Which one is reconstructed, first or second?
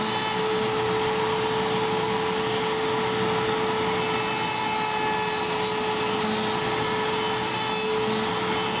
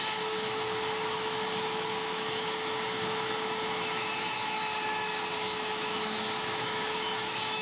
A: second